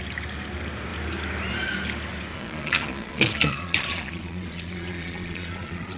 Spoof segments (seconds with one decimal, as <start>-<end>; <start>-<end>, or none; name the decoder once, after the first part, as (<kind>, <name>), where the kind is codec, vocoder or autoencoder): 2.3-6.0 (vocoder, Vocos)